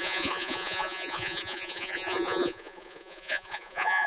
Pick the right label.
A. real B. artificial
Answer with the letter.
B